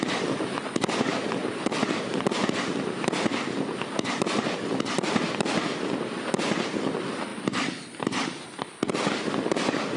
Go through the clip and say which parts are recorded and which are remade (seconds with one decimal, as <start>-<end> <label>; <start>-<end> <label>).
0.0-1.1 recorded; 1.1-1.8 remade; 1.8-4.7 recorded; 4.7-5.2 remade; 5.2-7.3 recorded; 7.3-9.1 remade; 9.1-10.0 recorded